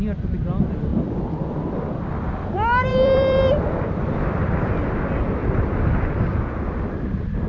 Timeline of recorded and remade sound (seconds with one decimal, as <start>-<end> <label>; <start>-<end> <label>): 0.0-0.9 recorded; 0.9-1.8 remade; 1.8-2.9 recorded; 2.9-4.9 remade; 4.9-5.4 recorded; 5.4-6.1 remade; 6.1-7.5 recorded